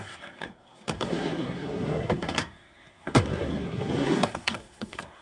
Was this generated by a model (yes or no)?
yes